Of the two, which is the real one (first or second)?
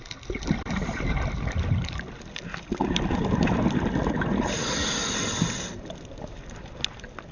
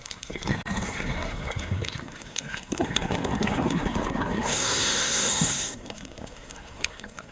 first